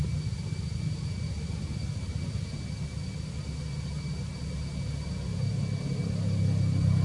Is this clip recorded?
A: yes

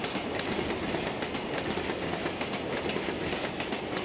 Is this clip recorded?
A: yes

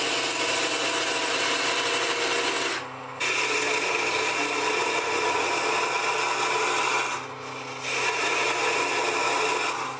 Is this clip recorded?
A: yes